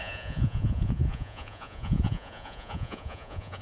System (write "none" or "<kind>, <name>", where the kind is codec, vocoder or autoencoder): vocoder, Vocos